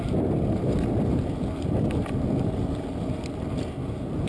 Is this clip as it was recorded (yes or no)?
yes